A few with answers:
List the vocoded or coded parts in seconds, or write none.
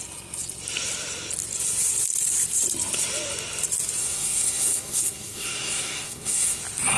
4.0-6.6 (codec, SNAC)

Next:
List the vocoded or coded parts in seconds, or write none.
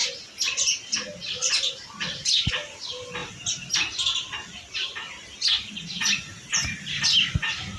none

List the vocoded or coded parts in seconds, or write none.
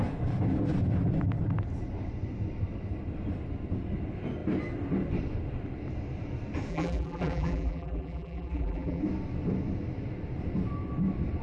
6.7-9.0 (vocoder, BigVGAN v2)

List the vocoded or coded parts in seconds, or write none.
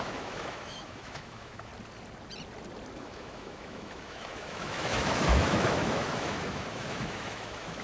0.0-1.7 (autoencoder, DAC-VAE); 3.0-7.8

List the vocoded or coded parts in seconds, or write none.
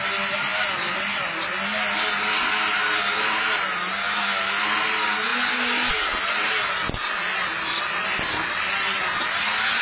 7.0-9.3 (vocoder, BigVGAN v2)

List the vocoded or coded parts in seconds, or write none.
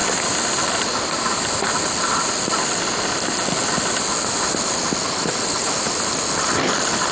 none